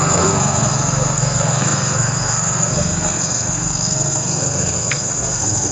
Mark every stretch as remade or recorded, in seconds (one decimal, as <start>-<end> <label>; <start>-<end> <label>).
0.0-5.7 remade